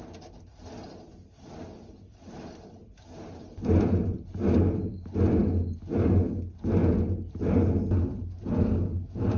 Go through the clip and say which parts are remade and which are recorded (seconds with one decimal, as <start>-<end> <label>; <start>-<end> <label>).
0.0-9.4 recorded